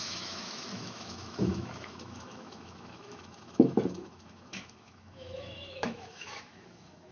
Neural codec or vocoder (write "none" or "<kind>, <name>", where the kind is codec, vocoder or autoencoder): autoencoder, DAC-VAE